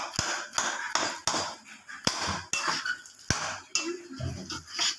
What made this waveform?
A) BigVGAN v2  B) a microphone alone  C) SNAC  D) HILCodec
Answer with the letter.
B